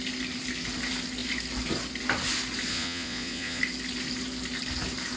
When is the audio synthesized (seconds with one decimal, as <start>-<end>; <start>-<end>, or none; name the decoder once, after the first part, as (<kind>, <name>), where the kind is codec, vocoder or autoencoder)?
2.7-3.6 (vocoder, Vocos)